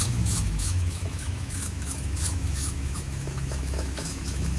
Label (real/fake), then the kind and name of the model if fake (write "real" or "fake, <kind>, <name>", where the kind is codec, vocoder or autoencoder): fake, autoencoder, DAC-VAE